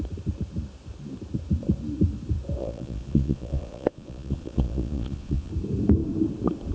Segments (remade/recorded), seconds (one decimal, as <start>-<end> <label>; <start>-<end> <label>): 0.0-2.6 recorded; 2.6-5.5 remade; 5.5-6.7 recorded

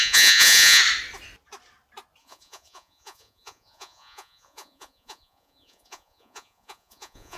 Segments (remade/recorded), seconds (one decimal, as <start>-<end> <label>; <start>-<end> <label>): 0.0-0.8 remade; 0.8-2.2 recorded; 2.2-7.4 remade

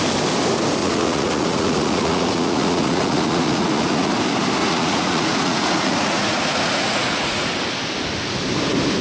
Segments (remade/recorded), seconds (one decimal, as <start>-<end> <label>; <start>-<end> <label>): 0.0-0.8 recorded; 0.8-4.1 remade; 4.1-4.6 recorded; 4.6-7.5 remade; 7.5-9.0 recorded

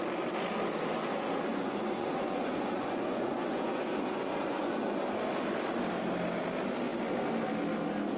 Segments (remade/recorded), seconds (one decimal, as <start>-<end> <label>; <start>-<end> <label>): 0.0-1.5 recorded; 1.5-5.0 remade; 5.0-8.2 recorded

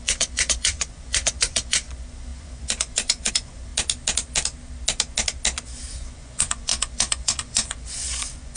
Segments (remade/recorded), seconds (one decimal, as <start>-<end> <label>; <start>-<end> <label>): 0.0-3.7 remade; 3.7-5.9 recorded; 5.9-8.6 remade

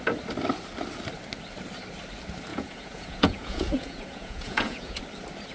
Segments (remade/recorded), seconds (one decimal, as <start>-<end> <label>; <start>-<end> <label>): 0.0-2.5 recorded; 2.5-5.0 remade; 5.0-5.5 recorded

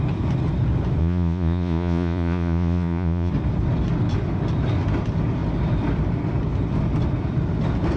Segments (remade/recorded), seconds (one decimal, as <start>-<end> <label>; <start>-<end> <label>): 0.0-1.0 recorded; 1.0-3.3 remade; 3.3-8.0 recorded

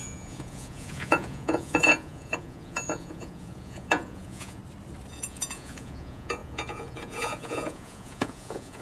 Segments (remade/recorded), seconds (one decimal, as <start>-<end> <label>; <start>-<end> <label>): 0.0-4.6 remade; 4.6-5.1 recorded; 5.1-8.8 remade